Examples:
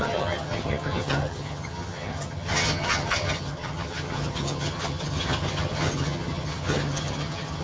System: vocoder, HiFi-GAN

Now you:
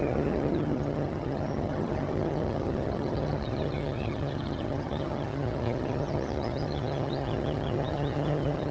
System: vocoder, HiFi-GAN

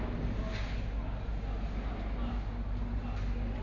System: none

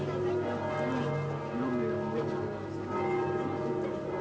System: none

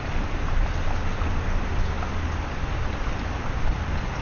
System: none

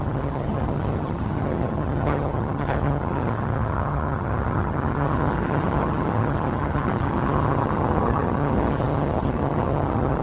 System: vocoder, HiFi-GAN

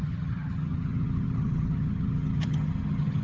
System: vocoder, HiFi-GAN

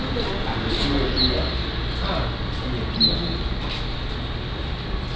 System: none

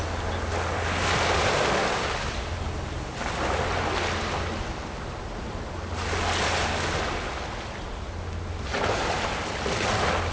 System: none